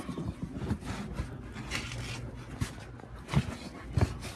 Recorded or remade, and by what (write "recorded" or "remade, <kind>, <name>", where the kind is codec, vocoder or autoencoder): recorded